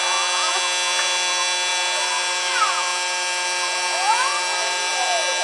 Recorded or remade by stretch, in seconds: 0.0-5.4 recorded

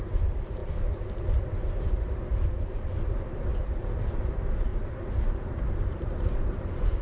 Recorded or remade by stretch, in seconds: 0.0-0.6 remade; 0.6-1.9 recorded; 1.9-4.7 remade; 4.7-5.6 recorded; 5.6-7.0 remade

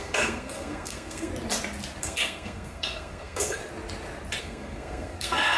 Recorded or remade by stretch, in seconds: 0.0-1.3 remade; 1.3-2.0 recorded; 2.0-3.6 remade; 3.6-4.4 recorded; 4.4-5.6 remade